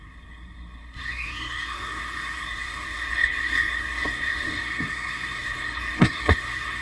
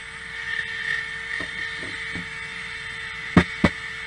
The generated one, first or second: first